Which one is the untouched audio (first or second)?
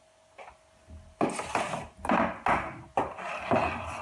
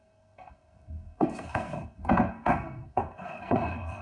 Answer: first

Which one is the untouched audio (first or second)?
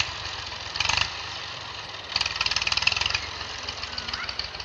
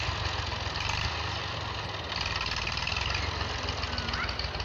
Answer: second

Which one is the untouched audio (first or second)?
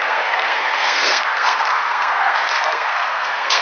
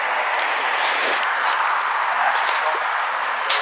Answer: second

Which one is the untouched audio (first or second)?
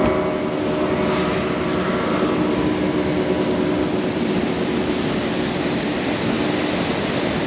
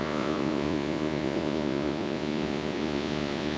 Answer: first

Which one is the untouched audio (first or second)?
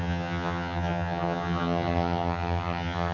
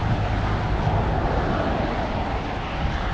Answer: second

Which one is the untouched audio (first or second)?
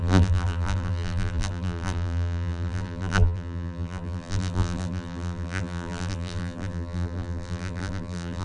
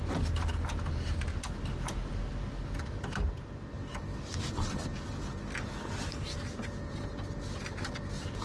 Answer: second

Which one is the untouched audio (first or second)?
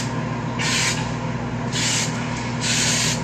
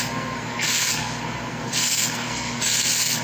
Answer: first